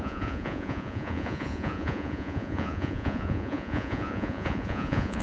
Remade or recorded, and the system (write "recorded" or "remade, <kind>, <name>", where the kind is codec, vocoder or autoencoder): remade, vocoder, Vocos